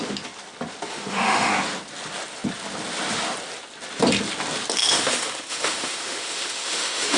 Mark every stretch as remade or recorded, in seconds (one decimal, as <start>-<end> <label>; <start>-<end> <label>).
0.0-0.9 recorded; 0.9-1.5 remade; 1.5-4.8 recorded; 4.8-7.2 remade